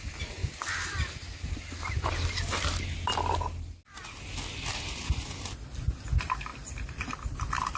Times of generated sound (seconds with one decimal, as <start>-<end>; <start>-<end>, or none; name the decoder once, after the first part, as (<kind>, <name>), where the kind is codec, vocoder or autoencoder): none